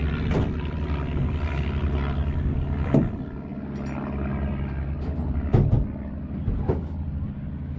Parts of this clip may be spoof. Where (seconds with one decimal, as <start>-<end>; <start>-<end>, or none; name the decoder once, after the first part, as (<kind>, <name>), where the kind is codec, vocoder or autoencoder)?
none